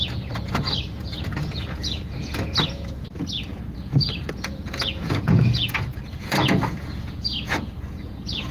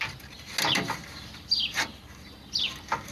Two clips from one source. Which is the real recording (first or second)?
second